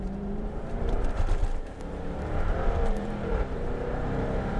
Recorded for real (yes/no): no